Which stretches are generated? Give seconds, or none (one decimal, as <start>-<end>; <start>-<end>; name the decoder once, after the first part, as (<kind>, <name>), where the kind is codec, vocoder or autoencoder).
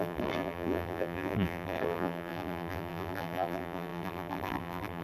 0.0-5.0 (vocoder, BigVGAN v2)